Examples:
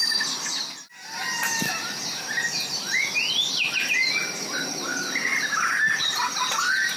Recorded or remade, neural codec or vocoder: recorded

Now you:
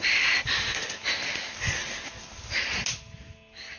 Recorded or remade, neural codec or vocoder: recorded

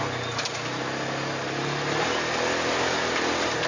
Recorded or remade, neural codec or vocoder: recorded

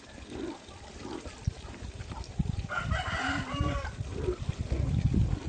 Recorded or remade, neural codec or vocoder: recorded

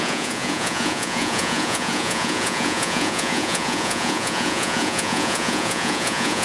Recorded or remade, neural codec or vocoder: remade, vocoder, Vocos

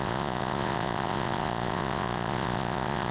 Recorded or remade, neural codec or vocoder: remade, vocoder, Vocos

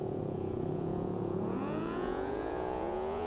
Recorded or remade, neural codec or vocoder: remade, vocoder, Vocos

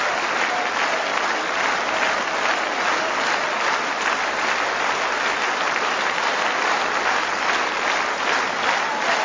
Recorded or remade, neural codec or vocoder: recorded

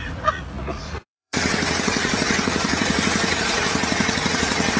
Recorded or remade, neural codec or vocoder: remade, vocoder, Vocos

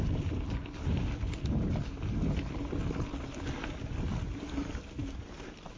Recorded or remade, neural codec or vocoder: recorded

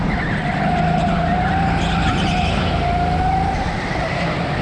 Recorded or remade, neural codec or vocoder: recorded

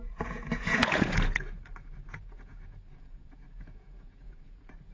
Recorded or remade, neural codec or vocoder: remade, vocoder, Vocos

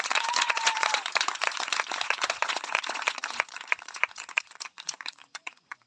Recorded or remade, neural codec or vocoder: remade, vocoder, Vocos